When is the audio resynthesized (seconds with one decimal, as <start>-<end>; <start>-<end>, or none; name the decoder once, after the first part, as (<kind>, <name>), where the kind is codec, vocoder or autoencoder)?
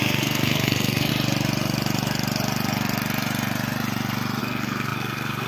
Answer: 0.0-1.1 (codec, SNAC); 4.4-5.5